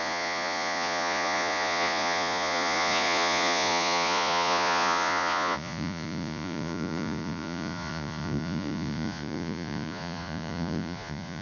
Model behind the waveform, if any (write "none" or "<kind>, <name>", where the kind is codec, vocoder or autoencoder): vocoder, Vocos